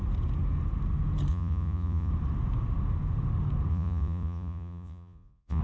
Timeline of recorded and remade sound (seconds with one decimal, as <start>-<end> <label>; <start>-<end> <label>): 0.0-1.3 recorded; 1.3-2.1 remade; 2.1-3.7 recorded; 3.7-5.6 remade